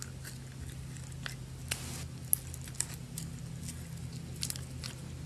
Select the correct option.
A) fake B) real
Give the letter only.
B